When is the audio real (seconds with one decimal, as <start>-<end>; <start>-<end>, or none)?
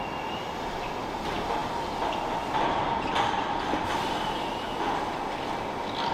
0.0-6.1